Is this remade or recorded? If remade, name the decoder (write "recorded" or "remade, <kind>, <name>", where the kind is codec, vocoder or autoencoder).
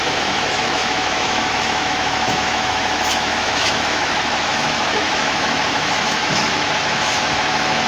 remade, autoencoder, DAC-VAE